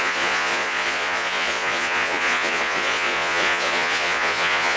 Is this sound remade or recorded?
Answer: remade